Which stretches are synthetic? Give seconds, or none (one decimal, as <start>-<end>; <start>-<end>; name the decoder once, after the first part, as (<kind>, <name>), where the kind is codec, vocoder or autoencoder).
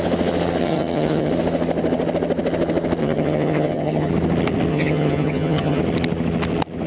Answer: 0.6-1.3 (vocoder, HiFi-GAN); 3.0-4.1; 4.7-5.8